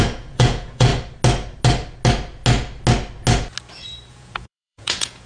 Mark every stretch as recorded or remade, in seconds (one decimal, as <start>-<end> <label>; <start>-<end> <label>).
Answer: 0.0-0.9 remade; 0.9-4.1 recorded; 4.1-5.3 remade